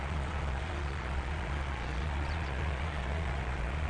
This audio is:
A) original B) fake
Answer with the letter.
B